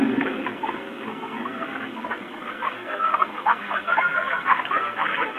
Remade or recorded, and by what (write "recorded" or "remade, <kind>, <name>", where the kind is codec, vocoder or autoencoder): remade, codec, SNAC